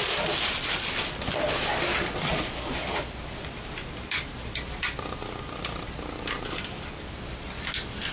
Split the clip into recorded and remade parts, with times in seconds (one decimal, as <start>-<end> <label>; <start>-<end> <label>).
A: 0.0-1.7 remade; 1.7-2.3 recorded; 2.3-6.9 remade; 6.9-8.1 recorded